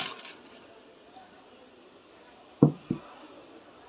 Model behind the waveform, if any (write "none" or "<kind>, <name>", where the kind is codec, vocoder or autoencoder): none